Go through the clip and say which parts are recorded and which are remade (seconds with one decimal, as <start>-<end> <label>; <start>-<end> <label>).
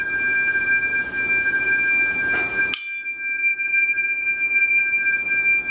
0.0-3.5 recorded; 3.5-4.8 remade; 4.8-5.7 recorded